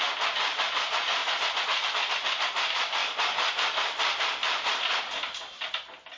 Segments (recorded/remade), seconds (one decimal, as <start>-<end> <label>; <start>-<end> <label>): 0.0-6.2 recorded